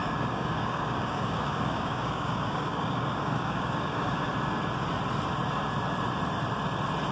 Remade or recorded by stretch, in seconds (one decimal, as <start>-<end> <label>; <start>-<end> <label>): 0.0-4.3 remade; 4.3-7.1 recorded